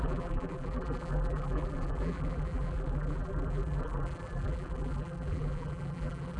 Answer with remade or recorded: remade